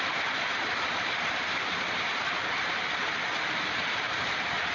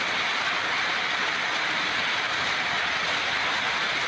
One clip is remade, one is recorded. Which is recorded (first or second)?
second